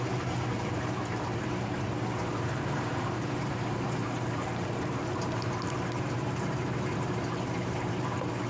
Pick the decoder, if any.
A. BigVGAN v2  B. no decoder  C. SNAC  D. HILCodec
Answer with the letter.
A